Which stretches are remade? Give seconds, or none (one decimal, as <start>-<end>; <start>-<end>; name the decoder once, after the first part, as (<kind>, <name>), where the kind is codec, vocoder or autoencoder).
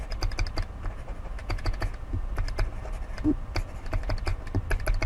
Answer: 1.4-2.2 (vocoder, Vocos)